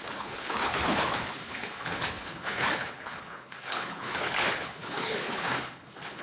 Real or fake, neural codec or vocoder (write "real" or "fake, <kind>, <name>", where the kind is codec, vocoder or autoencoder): fake, codec, HILCodec